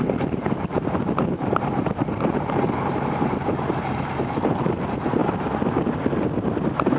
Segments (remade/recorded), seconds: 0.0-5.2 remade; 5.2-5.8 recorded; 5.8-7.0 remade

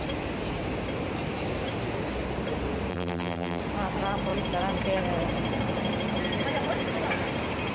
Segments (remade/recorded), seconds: 0.0-2.9 recorded; 2.9-3.6 remade; 3.6-7.7 recorded

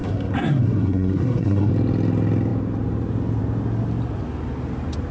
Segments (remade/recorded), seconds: 0.0-1.7 remade; 1.7-5.1 recorded

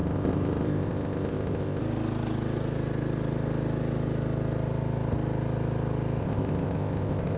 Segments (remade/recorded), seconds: 0.0-1.8 remade; 1.8-6.2 recorded; 6.2-7.4 remade

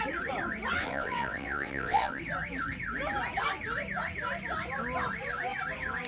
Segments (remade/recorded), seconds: 0.0-0.8 recorded; 0.8-2.2 remade; 2.2-6.1 recorded